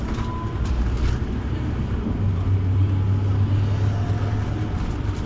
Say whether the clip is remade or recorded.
recorded